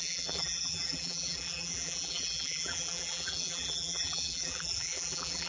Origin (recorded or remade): remade